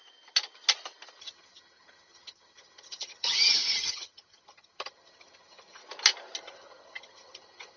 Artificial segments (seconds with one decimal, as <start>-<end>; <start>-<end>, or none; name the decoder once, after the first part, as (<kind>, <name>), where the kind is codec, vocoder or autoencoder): 1.2-5.8 (vocoder, HiFi-GAN); 6.4-7.8